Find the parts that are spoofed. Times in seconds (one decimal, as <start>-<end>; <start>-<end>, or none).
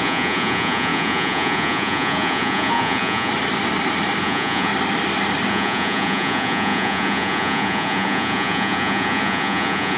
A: 0.0-3.3; 4.2-4.7; 5.5-10.0